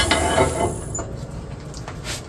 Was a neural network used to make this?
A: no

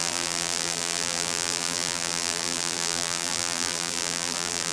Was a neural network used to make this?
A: yes